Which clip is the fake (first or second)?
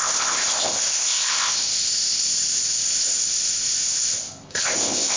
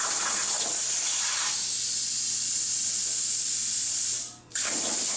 first